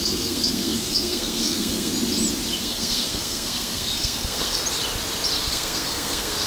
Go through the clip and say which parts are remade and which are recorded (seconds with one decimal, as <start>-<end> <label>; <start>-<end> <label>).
0.0-1.9 remade; 1.9-2.6 recorded; 2.6-4.6 remade; 4.6-5.5 recorded; 5.5-6.5 remade